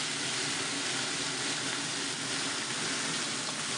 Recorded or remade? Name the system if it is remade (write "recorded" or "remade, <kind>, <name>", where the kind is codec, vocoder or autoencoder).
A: recorded